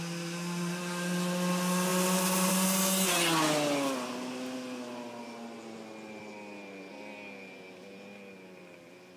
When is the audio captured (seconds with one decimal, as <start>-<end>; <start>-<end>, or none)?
0.0-1.9; 2.5-9.2